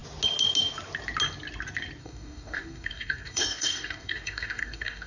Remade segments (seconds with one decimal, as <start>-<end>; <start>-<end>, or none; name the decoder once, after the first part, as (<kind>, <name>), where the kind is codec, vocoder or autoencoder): 2.0-5.1 (codec, DAC)